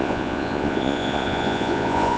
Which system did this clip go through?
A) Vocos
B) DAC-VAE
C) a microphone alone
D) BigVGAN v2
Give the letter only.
A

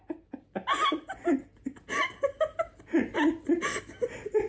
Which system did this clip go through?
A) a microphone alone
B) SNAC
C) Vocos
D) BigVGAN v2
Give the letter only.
A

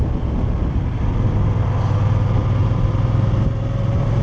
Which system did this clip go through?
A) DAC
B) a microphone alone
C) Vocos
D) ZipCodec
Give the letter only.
B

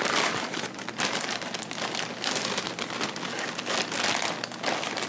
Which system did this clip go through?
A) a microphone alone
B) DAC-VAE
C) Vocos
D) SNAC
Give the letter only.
A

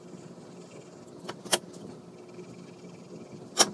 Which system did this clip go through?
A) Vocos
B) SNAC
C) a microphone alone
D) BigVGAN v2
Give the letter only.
C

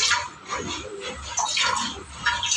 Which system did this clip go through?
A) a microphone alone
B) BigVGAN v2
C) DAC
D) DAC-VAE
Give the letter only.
A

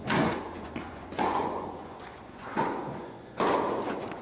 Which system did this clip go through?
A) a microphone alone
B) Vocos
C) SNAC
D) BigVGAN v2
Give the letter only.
B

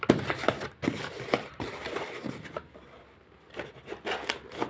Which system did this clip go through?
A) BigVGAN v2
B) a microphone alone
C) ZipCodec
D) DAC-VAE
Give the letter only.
B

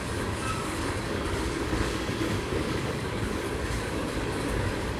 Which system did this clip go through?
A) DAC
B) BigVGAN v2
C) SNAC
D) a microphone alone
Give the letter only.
A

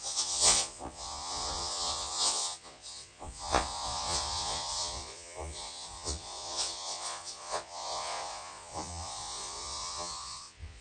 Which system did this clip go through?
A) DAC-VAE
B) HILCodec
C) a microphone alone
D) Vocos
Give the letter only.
D